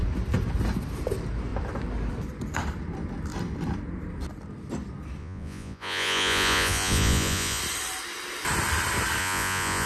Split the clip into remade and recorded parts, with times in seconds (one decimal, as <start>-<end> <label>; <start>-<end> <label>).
0.0-5.2 recorded; 5.2-7.6 remade; 7.6-9.2 recorded; 9.2-9.9 remade